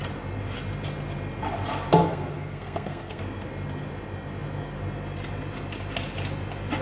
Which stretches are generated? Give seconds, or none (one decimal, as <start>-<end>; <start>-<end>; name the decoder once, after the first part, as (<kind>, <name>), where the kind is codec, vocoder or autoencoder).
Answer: 2.0-3.2 (codec, SNAC)